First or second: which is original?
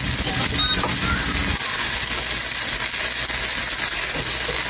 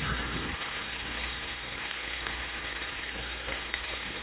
first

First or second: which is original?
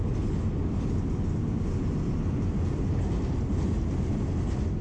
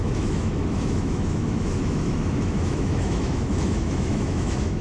first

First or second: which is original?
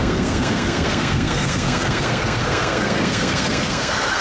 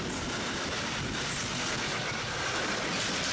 second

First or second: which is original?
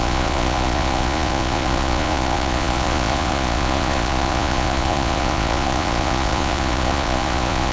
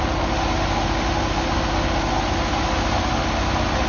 second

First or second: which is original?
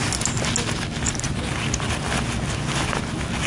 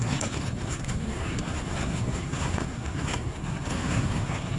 first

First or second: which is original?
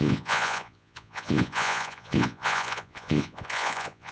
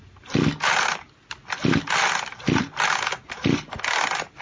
second